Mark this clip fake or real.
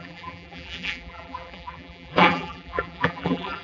fake